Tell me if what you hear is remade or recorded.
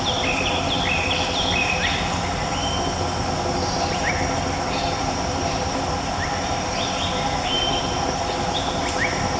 recorded